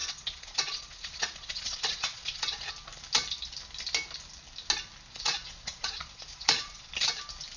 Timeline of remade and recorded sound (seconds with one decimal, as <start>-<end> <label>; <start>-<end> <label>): 0.0-2.7 remade; 2.7-5.1 recorded; 5.1-6.9 remade; 6.9-7.6 recorded

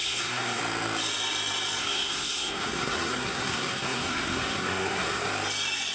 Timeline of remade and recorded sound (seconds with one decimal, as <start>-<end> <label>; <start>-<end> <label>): 0.0-0.6 remade; 0.6-1.8 recorded; 1.8-5.3 remade; 5.3-5.9 recorded

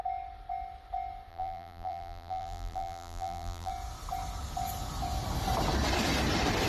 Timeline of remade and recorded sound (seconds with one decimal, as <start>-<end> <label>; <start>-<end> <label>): 0.0-1.3 recorded; 1.3-3.7 remade; 3.7-6.7 recorded

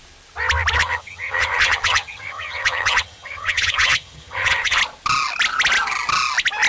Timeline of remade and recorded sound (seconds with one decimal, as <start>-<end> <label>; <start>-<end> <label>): 0.0-0.8 recorded; 0.8-4.8 remade; 4.8-6.7 recorded

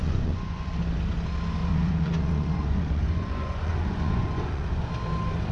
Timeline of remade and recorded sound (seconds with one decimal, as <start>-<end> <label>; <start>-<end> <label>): 0.0-0.7 remade; 0.7-1.6 recorded; 1.6-4.9 remade; 4.9-5.5 recorded